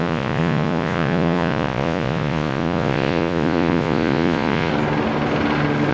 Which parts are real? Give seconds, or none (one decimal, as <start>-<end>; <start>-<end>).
4.7-5.9